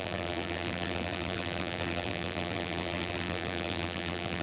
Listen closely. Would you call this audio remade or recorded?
remade